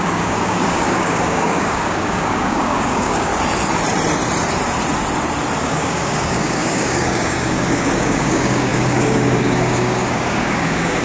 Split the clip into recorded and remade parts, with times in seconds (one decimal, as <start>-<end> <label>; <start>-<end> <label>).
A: 0.0-3.3 remade; 3.3-5.6 recorded; 5.6-11.0 remade